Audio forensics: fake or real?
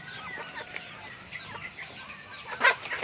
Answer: real